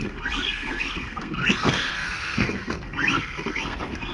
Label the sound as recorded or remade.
remade